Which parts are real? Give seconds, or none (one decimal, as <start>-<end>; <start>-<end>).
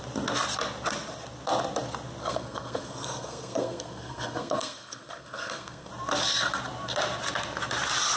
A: 0.0-2.2; 5.9-8.2